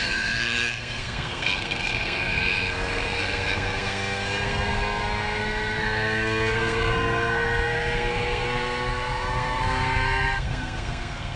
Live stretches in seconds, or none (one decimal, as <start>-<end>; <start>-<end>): none